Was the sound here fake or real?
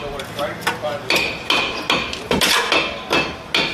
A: real